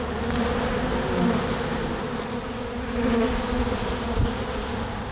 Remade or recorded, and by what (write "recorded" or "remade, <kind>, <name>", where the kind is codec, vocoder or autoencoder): recorded